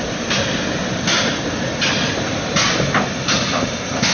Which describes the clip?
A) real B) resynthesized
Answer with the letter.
A